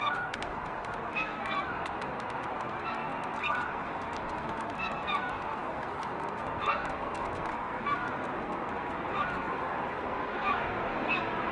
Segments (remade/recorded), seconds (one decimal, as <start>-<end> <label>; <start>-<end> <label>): 0.0-11.5 remade